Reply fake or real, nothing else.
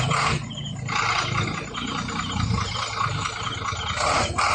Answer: real